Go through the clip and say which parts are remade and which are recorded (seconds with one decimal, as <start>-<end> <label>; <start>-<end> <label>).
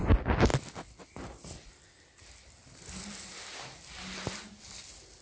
0.0-5.2 recorded